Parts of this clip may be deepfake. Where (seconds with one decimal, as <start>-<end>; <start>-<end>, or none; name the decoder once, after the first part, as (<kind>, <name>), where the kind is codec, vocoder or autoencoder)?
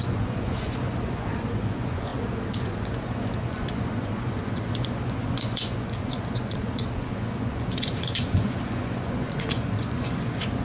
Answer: 0.0-10.6 (vocoder, Vocos)